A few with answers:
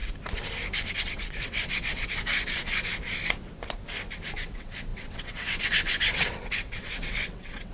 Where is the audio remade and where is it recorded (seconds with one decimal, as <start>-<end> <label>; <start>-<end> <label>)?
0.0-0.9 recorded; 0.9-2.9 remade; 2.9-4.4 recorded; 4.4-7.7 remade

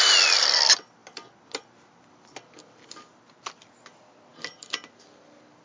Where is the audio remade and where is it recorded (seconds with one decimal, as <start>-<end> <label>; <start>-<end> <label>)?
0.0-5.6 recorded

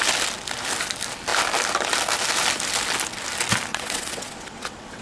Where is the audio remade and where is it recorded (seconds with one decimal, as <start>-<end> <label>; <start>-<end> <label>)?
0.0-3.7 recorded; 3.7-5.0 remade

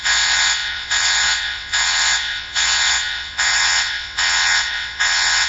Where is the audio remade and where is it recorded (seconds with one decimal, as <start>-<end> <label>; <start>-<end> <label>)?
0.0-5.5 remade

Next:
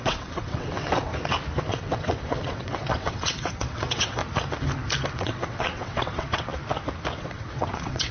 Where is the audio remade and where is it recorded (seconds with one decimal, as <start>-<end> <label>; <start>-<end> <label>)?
0.0-1.1 remade; 1.1-1.7 recorded; 1.7-4.2 remade; 4.2-5.1 recorded; 5.1-6.5 remade; 6.5-7.1 recorded; 7.1-8.1 remade

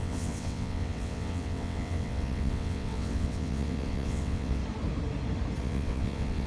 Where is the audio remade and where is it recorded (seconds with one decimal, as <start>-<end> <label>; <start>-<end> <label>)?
0.0-4.6 remade; 4.6-5.6 recorded; 5.6-6.5 remade

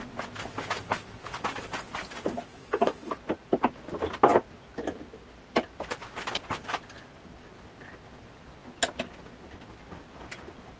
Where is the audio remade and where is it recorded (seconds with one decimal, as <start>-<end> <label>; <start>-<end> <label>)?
0.0-2.5 recorded; 2.5-3.1 remade; 3.1-10.8 recorded